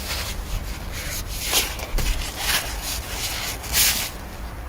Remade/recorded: recorded